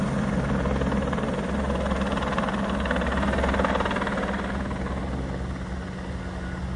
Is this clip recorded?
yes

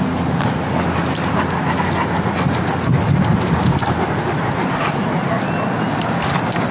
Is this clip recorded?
yes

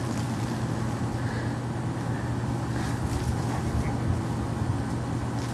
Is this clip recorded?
yes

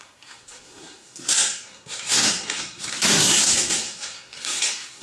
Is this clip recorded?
no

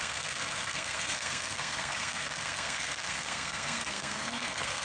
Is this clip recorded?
no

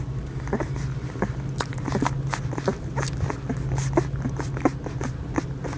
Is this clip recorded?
yes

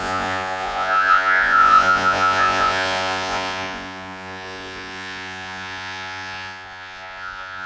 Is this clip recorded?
no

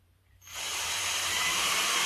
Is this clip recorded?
no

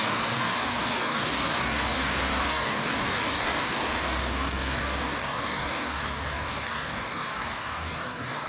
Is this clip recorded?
no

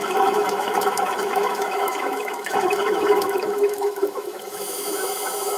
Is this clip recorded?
no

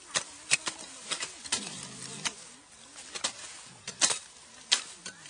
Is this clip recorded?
yes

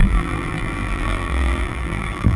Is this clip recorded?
no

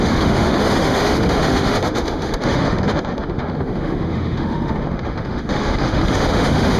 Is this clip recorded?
no